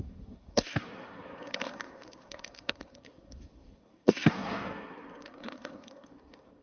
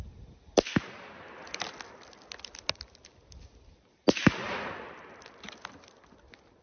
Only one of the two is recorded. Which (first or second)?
second